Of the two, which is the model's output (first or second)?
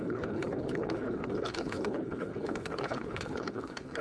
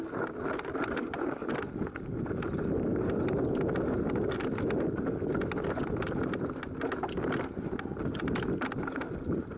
first